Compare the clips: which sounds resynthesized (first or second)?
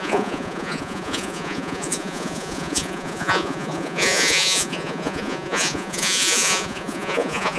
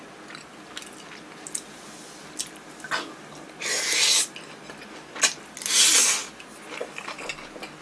first